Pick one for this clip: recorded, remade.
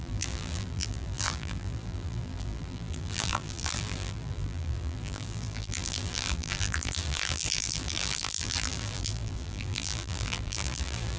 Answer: remade